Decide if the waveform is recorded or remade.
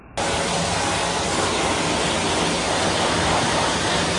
recorded